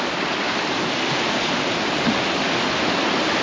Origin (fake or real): real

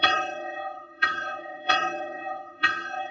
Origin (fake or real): fake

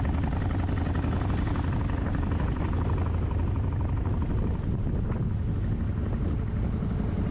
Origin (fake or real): real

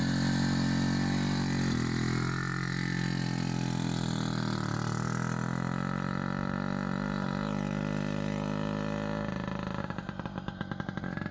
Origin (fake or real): real